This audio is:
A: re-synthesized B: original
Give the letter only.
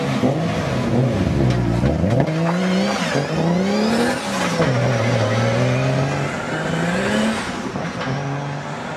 B